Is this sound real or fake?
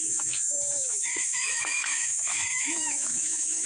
fake